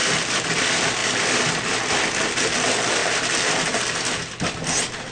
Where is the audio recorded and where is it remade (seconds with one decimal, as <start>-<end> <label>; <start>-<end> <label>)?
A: 0.0-5.1 recorded